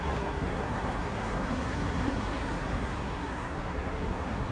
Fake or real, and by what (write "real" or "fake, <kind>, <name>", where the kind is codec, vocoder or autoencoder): fake, codec, SNAC